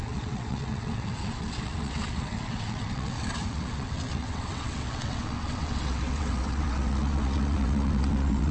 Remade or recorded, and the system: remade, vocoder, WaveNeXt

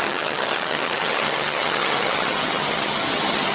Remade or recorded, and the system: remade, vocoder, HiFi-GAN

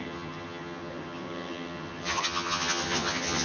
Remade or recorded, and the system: remade, vocoder, HiFi-GAN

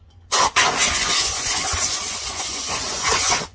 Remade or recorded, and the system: remade, vocoder, Vocos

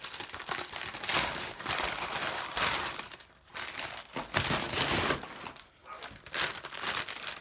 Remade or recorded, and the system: recorded